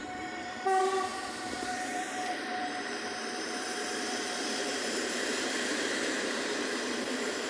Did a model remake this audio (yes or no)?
yes